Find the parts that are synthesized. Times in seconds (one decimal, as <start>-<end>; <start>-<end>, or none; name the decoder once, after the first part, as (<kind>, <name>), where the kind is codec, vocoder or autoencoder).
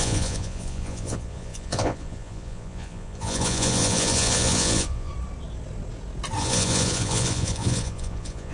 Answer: 0.0-5.1 (vocoder, Vocos); 6.4-8.5